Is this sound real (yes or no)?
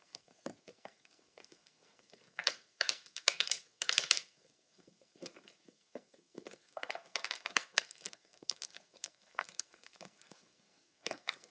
no